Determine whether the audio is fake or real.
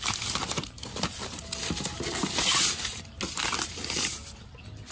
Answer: real